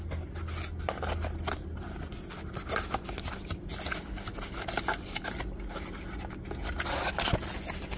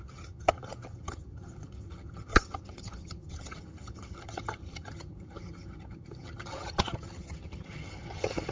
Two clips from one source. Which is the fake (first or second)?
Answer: second